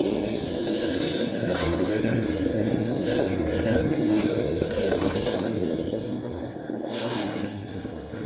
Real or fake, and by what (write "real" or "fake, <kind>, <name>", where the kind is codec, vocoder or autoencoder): fake, codec, SNAC